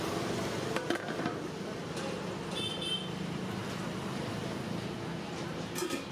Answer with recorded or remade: recorded